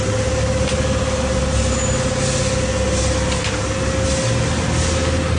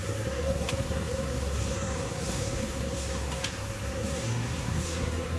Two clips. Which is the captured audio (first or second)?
first